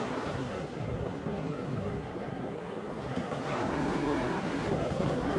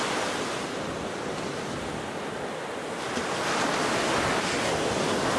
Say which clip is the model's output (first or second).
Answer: first